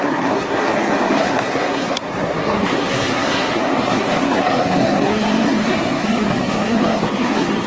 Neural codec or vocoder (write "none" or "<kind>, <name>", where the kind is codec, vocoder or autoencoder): codec, SNAC